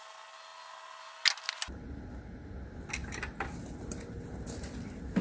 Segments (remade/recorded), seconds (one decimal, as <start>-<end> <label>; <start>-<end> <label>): 0.0-3.0 recorded; 3.0-4.2 remade; 4.2-5.2 recorded